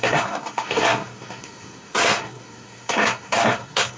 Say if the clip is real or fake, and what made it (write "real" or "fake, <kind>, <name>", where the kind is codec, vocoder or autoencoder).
fake, codec, SNAC